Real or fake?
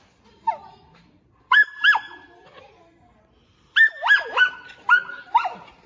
real